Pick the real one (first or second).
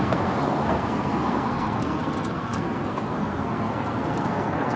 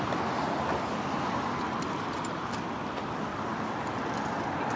second